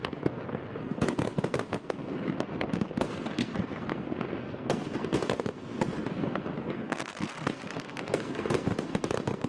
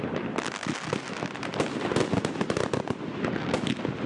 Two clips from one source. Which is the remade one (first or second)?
first